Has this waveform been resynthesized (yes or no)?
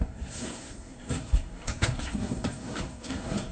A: yes